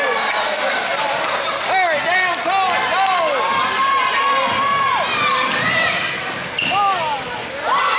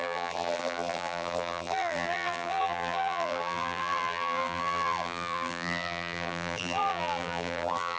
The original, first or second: first